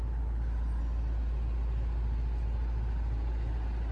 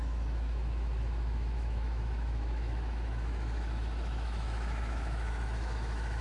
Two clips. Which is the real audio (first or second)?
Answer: first